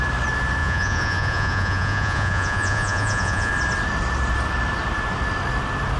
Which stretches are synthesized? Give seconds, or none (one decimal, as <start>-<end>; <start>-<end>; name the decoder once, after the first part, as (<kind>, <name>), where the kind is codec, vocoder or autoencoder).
0.6-3.5 (vocoder, Vocos)